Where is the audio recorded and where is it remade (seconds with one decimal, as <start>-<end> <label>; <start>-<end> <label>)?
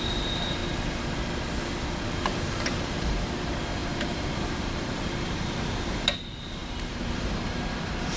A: 0.0-0.6 remade; 0.6-2.1 recorded; 2.1-8.2 remade